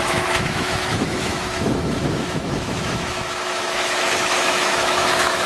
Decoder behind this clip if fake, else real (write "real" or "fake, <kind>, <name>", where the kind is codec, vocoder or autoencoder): fake, autoencoder, DAC-VAE